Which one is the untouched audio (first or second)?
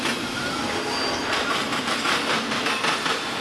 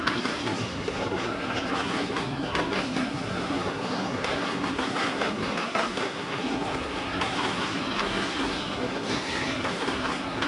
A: first